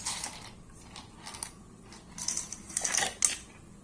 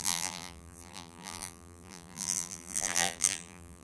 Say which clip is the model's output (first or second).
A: second